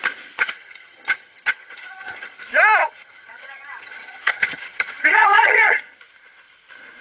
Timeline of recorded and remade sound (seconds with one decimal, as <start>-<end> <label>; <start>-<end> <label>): 0.0-0.4 recorded; 0.4-2.4 remade; 2.4-2.8 recorded; 2.8-5.8 remade; 5.8-7.0 recorded